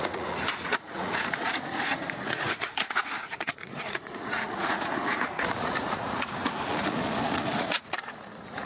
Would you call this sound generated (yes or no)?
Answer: yes